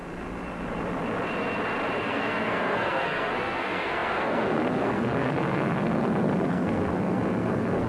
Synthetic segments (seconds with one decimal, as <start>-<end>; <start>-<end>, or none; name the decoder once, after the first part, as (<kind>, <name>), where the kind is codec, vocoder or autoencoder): 2.0-7.9 (codec, SNAC)